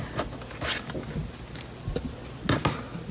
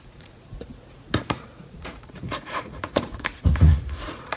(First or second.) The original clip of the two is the first